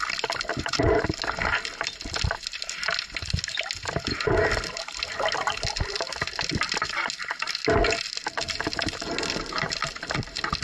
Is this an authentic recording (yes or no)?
yes